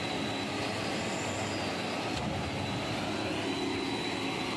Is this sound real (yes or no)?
yes